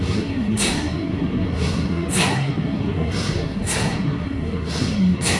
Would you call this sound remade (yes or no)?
yes